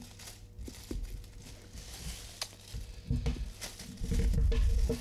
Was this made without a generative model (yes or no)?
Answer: yes